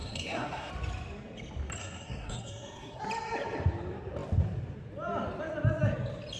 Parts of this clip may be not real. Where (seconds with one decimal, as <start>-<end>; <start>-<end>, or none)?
0.0-0.7; 1.8-3.0